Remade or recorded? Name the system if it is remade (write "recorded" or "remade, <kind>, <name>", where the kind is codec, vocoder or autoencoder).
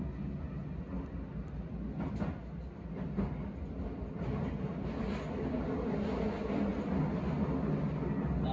recorded